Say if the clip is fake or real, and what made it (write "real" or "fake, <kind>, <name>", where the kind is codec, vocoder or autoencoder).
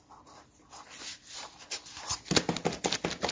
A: real